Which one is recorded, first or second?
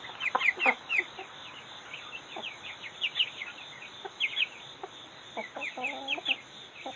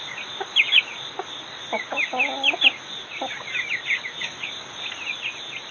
second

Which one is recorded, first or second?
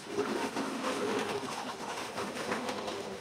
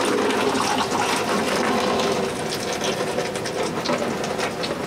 second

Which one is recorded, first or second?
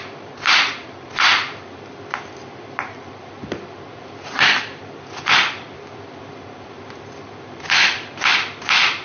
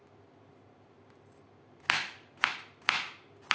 second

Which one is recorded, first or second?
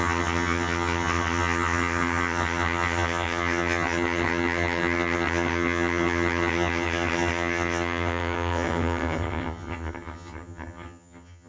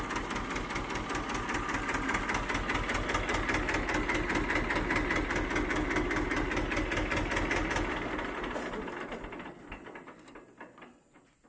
second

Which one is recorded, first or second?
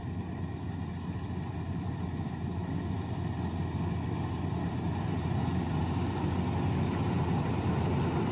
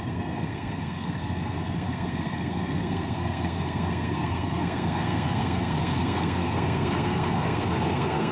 first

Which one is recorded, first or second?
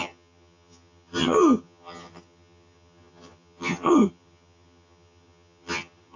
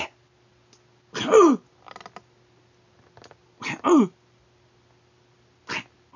second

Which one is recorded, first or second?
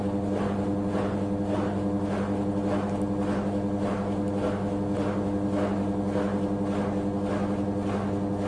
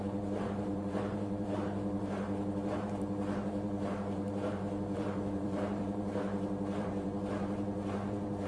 first